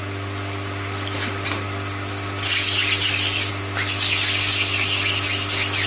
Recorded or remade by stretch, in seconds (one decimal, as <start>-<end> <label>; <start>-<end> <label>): 0.0-5.9 recorded